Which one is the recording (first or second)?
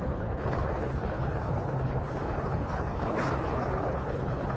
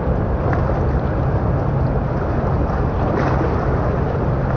second